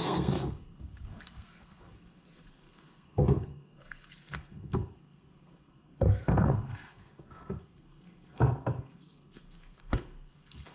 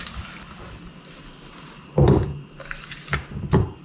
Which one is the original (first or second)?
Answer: second